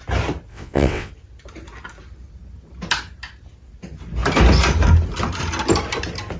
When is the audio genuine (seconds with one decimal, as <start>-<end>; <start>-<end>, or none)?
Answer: 0.0-0.5; 1.1-6.4